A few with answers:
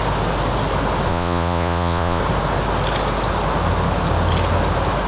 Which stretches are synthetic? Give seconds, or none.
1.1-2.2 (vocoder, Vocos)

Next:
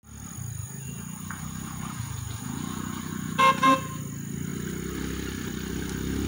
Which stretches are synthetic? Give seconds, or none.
0.6-4.0 (vocoder, Vocos)

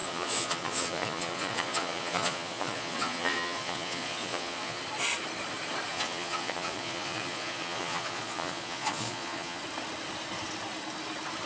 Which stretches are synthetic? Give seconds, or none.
0.0-4.8 (vocoder, Vocos); 5.9-9.6

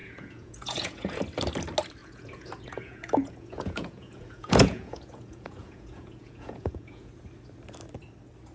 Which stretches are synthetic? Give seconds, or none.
0.0-1.2 (vocoder, Vocos); 2.0-7.1

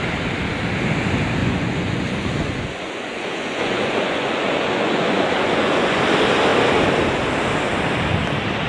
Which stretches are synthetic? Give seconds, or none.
1.4-6.0 (vocoder, Vocos)